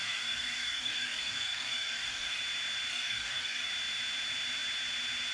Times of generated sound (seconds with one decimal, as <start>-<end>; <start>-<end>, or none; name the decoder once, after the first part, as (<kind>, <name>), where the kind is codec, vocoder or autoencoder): 0.0-2.4 (codec, DAC); 2.9-3.7